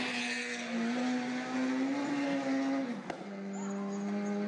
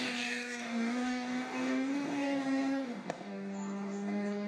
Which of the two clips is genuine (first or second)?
first